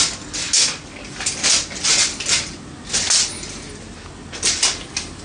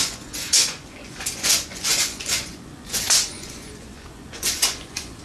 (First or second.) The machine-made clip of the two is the second